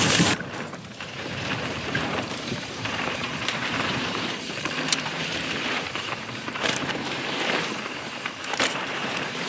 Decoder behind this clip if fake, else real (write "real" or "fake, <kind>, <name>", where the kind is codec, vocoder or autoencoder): fake, vocoder, BigVGAN v2